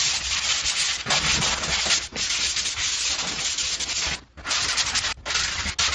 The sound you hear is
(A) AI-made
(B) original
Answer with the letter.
B